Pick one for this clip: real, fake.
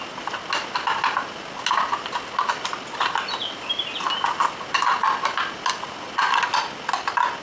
real